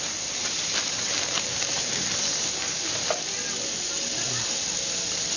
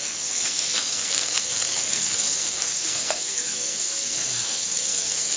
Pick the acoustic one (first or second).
first